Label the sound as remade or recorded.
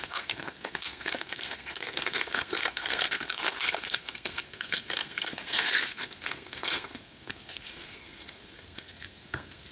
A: remade